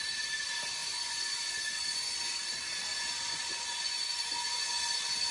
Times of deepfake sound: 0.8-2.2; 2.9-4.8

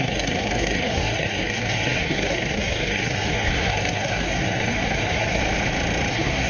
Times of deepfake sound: 0.0-5.4; 6.1-6.5

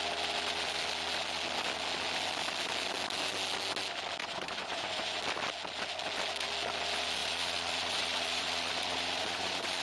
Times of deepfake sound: 4.2-5.2; 7.2-9.8

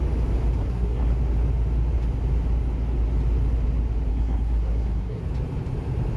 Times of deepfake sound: 0.6-1.2; 4.1-5.2

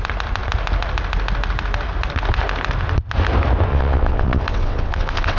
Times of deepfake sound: 3.7-5.4

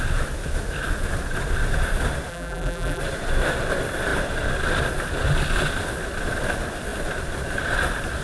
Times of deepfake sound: 2.3-3.0

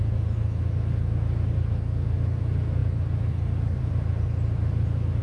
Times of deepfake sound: 2.8-3.9

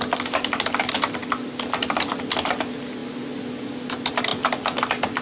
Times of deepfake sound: none